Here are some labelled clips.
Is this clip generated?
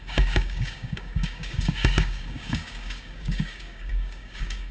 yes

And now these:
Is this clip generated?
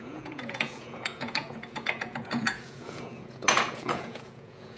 yes